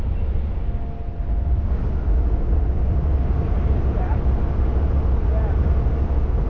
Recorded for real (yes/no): yes